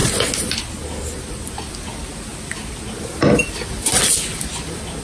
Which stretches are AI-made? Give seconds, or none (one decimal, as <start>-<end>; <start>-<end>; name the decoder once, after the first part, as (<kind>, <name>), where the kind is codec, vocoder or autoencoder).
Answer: none